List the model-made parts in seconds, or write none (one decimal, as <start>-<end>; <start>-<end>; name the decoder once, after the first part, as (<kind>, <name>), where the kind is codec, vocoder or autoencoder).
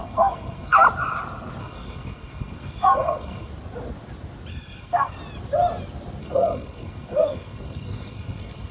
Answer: 0.0-0.8 (codec, SNAC); 1.6-3.5; 4.5-5.2; 6.2-8.7